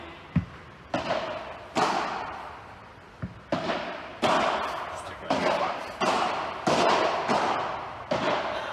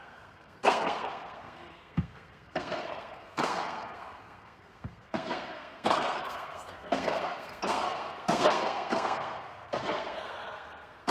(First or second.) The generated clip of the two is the second